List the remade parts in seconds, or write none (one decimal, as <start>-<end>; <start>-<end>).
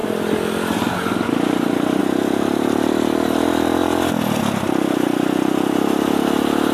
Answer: none